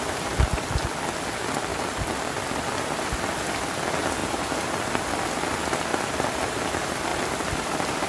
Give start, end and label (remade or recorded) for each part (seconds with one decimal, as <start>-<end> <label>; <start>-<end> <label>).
0.0-1.7 recorded; 1.7-2.8 remade; 2.8-5.9 recorded; 5.9-6.5 remade; 6.5-7.1 recorded; 7.1-8.1 remade